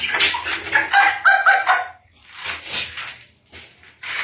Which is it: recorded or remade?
recorded